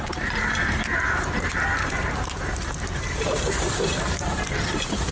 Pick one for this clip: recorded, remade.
remade